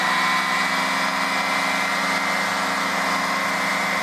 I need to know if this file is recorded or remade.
recorded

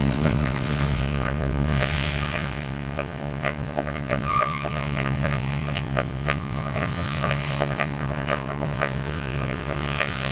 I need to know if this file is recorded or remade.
remade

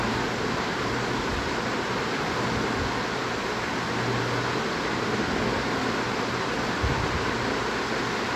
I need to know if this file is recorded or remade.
recorded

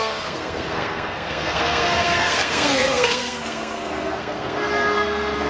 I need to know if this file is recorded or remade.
remade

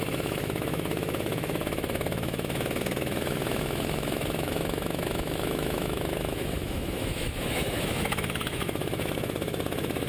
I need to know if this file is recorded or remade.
remade